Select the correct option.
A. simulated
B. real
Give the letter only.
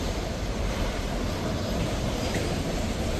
A